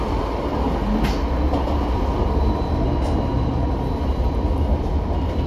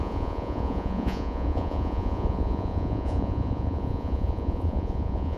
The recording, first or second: first